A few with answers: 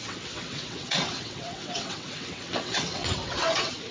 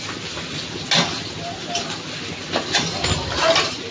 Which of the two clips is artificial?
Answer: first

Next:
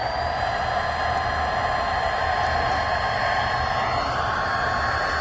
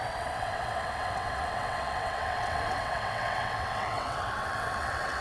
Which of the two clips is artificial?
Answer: second